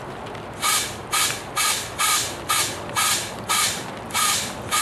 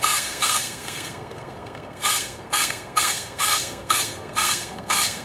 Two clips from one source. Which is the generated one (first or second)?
second